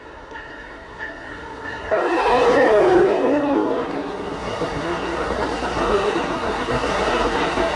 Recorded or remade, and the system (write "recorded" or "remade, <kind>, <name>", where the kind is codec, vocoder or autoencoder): remade, codec, SNAC